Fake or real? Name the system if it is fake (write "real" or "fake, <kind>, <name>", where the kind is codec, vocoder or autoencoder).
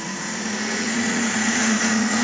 fake, vocoder, Vocos